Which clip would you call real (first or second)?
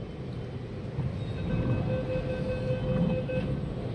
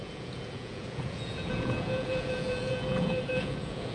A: first